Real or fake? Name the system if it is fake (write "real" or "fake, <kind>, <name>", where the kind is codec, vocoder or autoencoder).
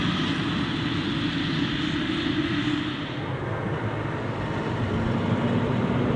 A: real